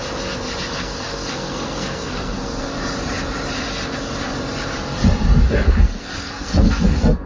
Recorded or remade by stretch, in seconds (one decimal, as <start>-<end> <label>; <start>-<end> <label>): 0.0-0.7 recorded; 0.7-2.7 remade; 2.7-5.8 recorded; 5.8-7.3 remade